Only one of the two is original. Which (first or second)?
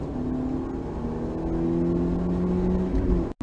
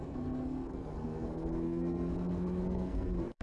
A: first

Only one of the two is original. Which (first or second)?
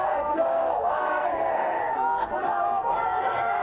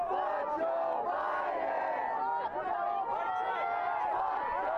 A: second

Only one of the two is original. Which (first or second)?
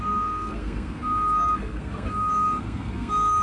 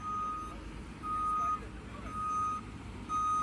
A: second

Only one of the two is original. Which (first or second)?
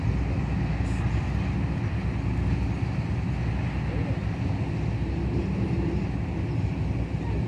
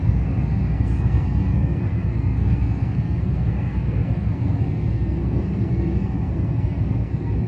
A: first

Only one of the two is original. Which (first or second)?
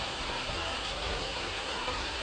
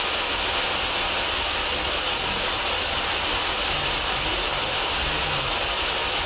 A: second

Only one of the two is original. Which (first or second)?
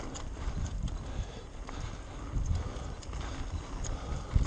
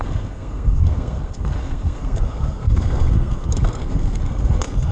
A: first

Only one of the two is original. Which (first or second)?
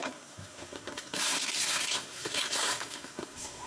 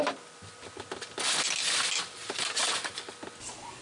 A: second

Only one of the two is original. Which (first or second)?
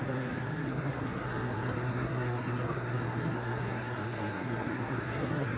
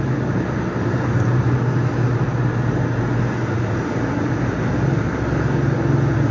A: second